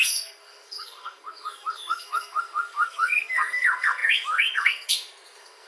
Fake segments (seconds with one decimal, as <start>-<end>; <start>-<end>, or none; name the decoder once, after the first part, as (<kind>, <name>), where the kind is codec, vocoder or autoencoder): 0.0-5.7 (codec, SNAC)